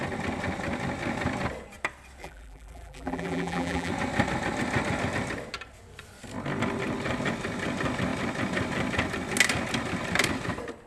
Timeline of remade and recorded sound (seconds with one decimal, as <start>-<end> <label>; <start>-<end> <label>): 0.0-2.2 recorded; 2.2-3.9 remade; 3.9-10.9 recorded